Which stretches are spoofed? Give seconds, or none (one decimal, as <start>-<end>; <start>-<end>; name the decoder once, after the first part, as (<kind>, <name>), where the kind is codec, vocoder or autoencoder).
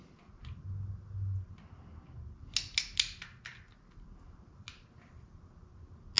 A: none